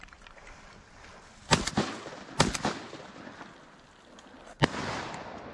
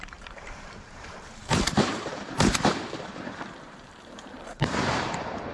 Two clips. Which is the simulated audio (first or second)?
second